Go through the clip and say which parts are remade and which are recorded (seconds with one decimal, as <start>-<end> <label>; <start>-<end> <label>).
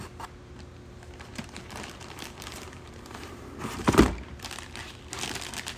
0.0-1.3 recorded; 1.3-4.5 remade; 4.5-5.8 recorded